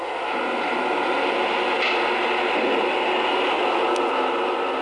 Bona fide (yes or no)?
yes